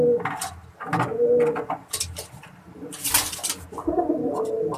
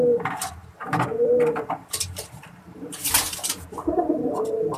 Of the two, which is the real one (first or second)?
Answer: first